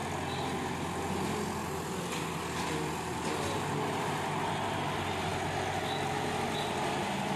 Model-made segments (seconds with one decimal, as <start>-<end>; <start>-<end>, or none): none

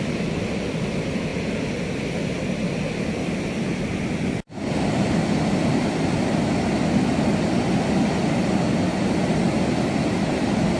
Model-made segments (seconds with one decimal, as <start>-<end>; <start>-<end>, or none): none

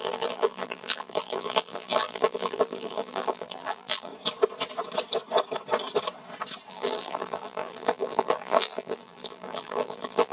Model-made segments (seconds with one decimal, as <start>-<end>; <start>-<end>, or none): 0.0-4.1; 6.7-10.3